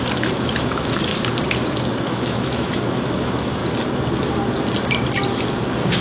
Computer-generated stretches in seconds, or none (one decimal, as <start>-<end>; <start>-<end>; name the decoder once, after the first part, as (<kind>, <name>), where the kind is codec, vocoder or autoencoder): 0.0-1.1 (autoencoder, DAC-VAE); 2.0-3.6